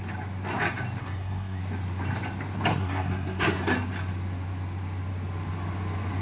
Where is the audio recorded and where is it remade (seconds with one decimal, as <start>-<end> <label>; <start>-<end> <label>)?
0.0-1.0 recorded; 1.0-1.6 remade; 1.6-2.7 recorded; 2.7-3.6 remade; 3.6-6.2 recorded